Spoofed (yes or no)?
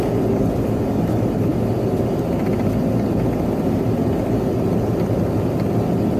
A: no